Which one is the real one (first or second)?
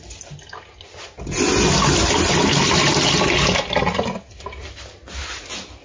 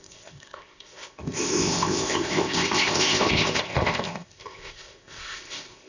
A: first